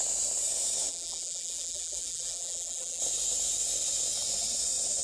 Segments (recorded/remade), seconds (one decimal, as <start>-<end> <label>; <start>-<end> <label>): 0.0-0.9 recorded; 0.9-3.0 remade; 3.0-5.0 recorded